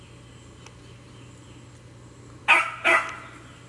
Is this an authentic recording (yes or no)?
yes